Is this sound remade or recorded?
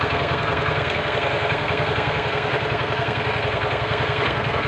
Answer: remade